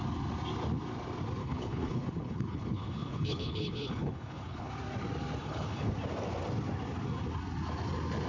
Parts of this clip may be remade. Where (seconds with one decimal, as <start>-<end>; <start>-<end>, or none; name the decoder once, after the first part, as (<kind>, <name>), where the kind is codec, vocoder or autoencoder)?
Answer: 1.4-4.7 (codec, HILCodec); 5.4-5.9